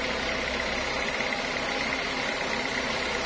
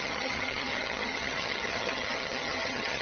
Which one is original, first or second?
first